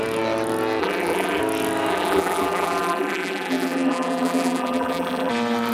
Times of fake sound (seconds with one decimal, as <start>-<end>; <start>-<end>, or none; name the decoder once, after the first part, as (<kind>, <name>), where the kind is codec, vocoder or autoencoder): 0.8-1.4 (vocoder, BigVGAN v2); 1.9-5.3